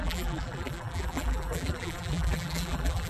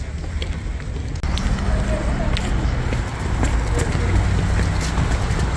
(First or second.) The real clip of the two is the second